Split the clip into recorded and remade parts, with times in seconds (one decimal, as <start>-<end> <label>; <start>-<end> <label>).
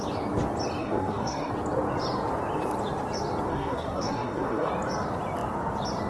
0.0-0.8 recorded; 0.8-1.5 remade; 1.5-3.5 recorded; 3.5-4.7 remade; 4.7-6.1 recorded